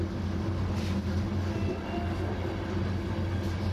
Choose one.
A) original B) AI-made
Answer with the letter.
A